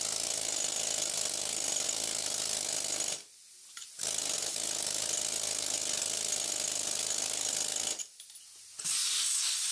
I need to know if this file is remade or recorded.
recorded